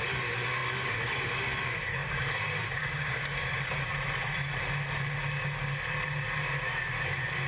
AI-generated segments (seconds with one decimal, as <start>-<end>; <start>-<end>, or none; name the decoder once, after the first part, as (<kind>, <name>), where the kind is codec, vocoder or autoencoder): 0.0-3.9 (codec, DAC)